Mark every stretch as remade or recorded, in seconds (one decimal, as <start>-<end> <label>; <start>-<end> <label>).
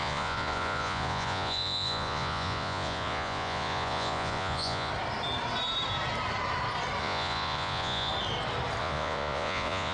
0.0-4.9 remade; 4.9-7.0 recorded; 7.0-8.1 remade; 8.1-8.8 recorded; 8.8-9.9 remade